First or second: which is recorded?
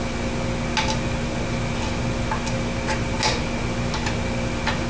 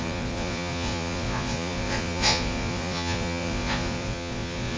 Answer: first